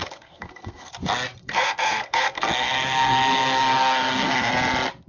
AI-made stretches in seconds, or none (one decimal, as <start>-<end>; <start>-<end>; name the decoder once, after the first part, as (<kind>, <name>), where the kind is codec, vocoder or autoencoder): 0.0-0.9 (codec, SNAC); 1.4-4.5